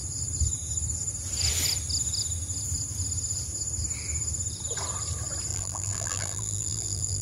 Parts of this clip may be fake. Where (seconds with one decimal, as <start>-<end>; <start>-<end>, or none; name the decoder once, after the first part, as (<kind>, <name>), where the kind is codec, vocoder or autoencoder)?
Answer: 5.5-7.2 (vocoder, BigVGAN v2)